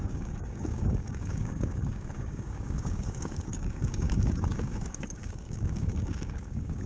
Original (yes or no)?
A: no